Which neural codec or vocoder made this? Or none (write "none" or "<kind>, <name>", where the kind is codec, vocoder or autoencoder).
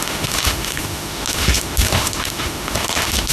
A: autoencoder, DAC-VAE